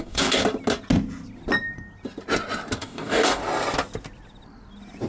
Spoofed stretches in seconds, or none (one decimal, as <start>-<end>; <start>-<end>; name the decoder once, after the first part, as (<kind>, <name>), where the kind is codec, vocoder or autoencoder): 0.0-0.4 (codec, DAC); 2.8-3.4